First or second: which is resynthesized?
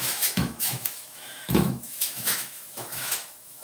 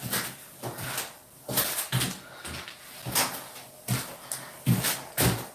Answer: first